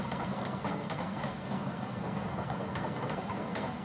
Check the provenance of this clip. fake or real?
fake